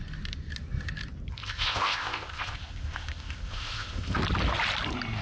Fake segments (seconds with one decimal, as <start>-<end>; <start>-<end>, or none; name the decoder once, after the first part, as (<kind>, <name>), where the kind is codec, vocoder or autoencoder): 1.3-4.2 (codec, ZipCodec)